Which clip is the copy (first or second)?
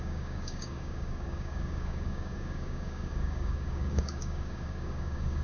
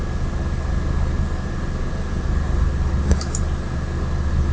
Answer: first